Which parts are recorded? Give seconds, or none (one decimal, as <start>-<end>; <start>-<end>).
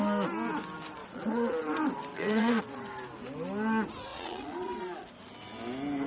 0.0-1.0; 1.7-2.1; 2.6-4.1; 4.7-6.1